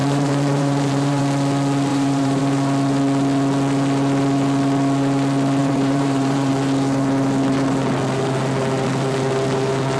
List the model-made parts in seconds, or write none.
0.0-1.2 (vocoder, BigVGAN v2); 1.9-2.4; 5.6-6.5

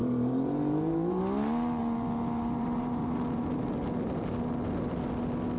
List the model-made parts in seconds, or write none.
0.0-1.2 (vocoder, BigVGAN v2); 1.8-3.7

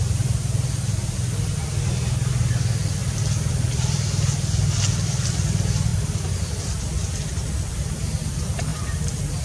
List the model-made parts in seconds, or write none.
0.0-1.0 (vocoder, BigVGAN v2); 2.3-5.9; 7.7-9.4

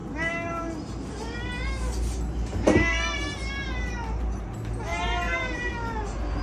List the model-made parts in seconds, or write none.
4.9-5.7 (vocoder, BigVGAN v2)

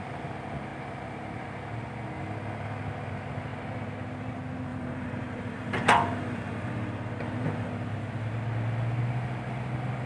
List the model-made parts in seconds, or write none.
4.7-7.7 (vocoder, BigVGAN v2)